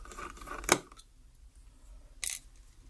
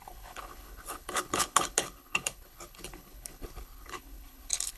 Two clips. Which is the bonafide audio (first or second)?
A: first